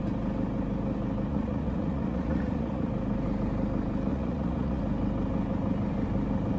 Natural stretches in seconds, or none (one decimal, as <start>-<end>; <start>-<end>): 0.0-1.3; 2.9-4.1; 4.8-6.6